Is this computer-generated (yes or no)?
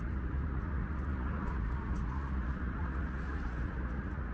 yes